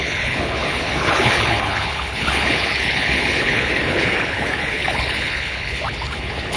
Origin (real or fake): fake